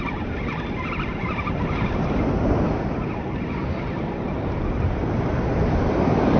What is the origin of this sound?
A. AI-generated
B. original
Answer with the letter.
B